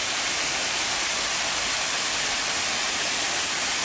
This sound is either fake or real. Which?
real